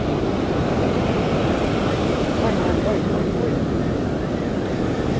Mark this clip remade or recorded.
recorded